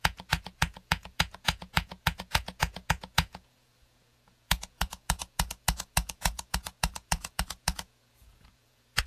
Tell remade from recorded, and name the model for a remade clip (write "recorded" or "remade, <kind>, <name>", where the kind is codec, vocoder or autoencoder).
remade, vocoder, Vocos